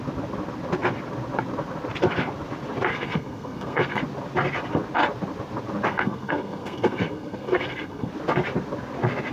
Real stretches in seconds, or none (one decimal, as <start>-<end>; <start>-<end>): 0.0-2.9; 4.0-5.9; 8.1-9.3